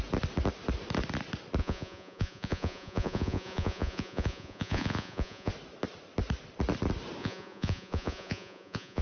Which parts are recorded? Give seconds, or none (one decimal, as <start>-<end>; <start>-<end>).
0.0-1.6; 5.5-7.2